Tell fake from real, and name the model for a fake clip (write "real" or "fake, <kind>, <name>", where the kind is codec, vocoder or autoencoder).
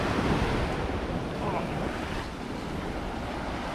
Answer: real